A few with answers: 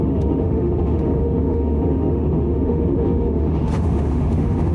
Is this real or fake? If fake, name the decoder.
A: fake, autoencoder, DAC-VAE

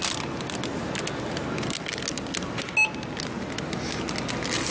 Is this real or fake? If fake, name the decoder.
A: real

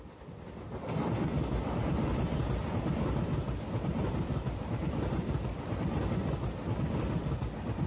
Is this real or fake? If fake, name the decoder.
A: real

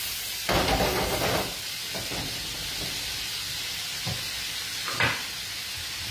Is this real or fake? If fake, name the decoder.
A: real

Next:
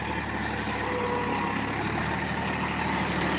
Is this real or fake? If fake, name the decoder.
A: real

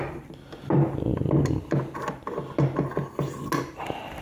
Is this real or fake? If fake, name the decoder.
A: real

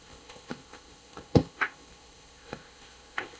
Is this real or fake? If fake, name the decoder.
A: fake, codec, ZipCodec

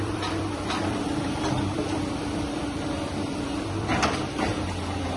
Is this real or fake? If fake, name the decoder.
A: fake, vocoder, BigVGAN v2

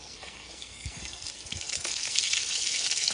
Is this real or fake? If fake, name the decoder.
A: fake, codec, SNAC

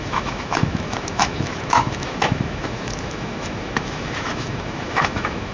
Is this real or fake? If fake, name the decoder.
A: fake, autoencoder, DAC-VAE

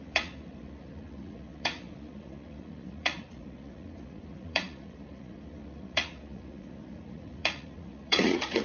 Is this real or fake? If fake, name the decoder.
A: fake, vocoder, Vocos